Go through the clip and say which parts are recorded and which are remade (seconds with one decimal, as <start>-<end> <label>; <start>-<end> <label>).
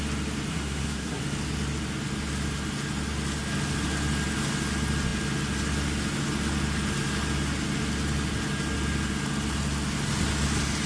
0.0-0.5 recorded; 0.5-1.2 remade; 1.2-10.9 recorded